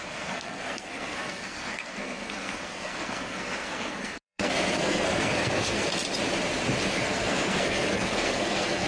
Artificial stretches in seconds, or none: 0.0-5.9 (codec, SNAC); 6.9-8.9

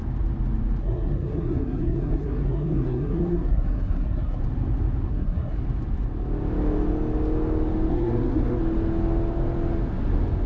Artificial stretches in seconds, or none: 0.8-4.4 (codec, SNAC); 5.1-5.6; 7.9-8.6

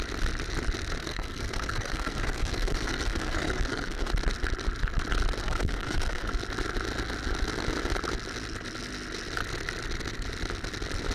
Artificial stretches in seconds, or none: 1.0-4.1 (codec, SNAC); 5.4-6.3

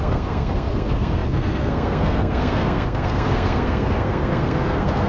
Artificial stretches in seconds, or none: 0.0-5.1 (codec, SNAC)

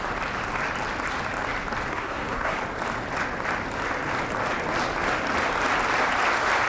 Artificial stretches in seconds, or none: 1.9-2.6 (codec, SNAC)

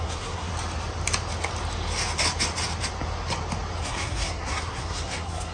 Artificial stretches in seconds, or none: 0.0-0.5 (codec, SNAC); 3.8-5.5

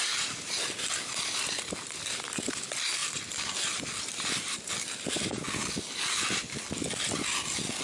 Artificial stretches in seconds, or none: none

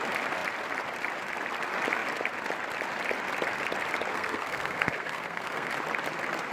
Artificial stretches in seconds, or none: 4.1-5.7 (codec, SNAC)